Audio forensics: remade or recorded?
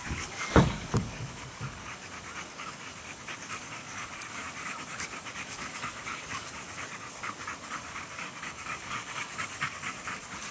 remade